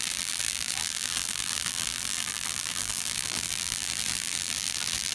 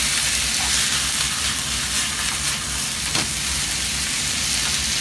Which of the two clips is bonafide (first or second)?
second